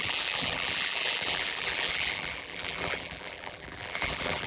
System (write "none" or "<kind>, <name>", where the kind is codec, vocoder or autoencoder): vocoder, BigVGAN v2